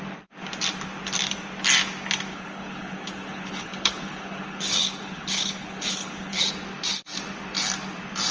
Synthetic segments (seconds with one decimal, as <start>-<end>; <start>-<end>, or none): 2.3-6.5